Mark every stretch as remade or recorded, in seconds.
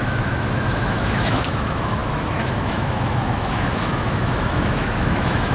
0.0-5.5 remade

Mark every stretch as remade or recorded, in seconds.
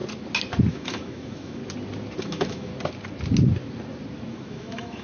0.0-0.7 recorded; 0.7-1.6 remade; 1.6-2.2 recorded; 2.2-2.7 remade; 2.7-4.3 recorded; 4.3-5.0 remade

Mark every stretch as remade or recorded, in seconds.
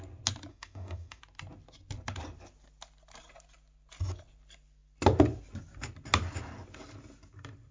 0.0-0.5 recorded; 0.5-1.2 remade; 1.2-7.7 recorded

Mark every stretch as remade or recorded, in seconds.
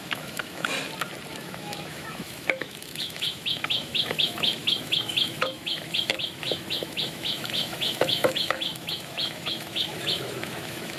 0.0-0.7 remade; 0.7-1.3 recorded; 1.3-11.0 remade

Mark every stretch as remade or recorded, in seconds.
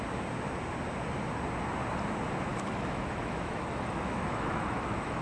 0.0-2.5 recorded; 2.5-5.2 remade